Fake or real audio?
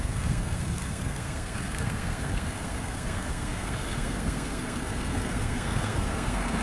fake